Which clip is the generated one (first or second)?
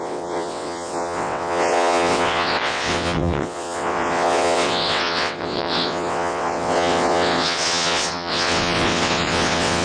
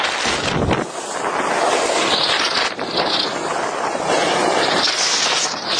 first